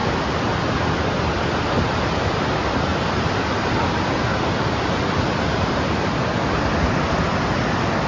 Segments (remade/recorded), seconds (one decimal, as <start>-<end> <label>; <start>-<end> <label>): 0.0-8.1 recorded